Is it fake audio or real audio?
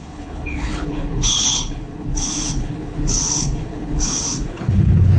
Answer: fake